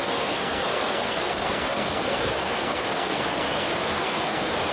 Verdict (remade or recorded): remade